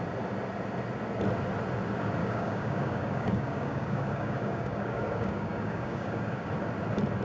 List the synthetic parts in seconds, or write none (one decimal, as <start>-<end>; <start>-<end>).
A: 2.2-6.5